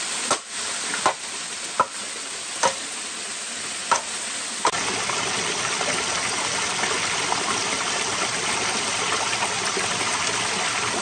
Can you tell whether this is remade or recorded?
recorded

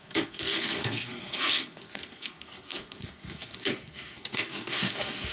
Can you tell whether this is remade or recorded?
remade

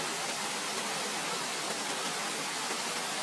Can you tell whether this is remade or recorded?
recorded